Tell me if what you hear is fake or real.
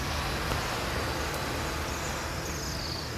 real